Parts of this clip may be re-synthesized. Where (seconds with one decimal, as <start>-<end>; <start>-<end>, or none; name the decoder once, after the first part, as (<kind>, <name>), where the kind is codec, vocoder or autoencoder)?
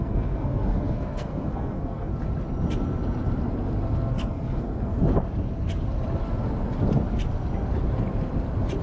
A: 0.0-2.1 (codec, SNAC); 4.1-5.0